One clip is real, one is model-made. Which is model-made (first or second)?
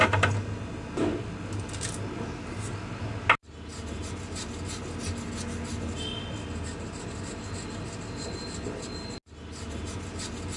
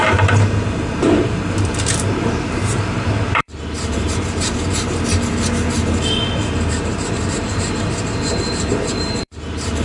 second